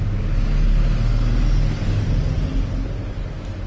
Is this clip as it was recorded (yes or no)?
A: yes